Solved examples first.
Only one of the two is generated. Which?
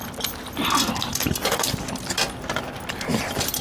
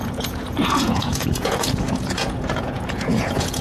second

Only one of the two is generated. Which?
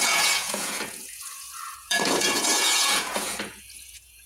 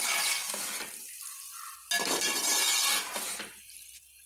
first